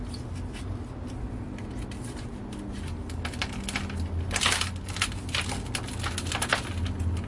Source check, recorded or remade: recorded